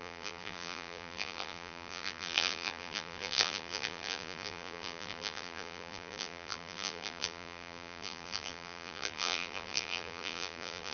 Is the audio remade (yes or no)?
yes